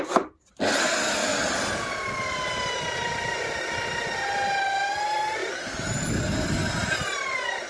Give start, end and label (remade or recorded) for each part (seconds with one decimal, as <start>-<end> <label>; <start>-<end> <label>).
0.0-1.3 remade; 1.3-4.7 recorded; 4.7-7.7 remade